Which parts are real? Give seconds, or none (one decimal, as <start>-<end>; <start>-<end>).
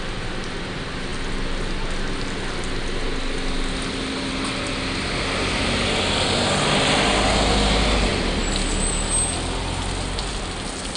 0.0-11.0